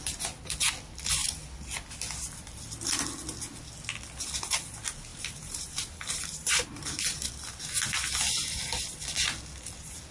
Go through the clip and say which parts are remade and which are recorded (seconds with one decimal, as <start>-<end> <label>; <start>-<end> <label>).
0.0-5.1 recorded; 5.1-7.3 remade; 7.3-10.1 recorded